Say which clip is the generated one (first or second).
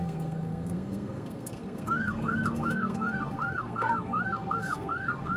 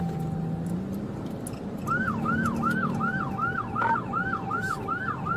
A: first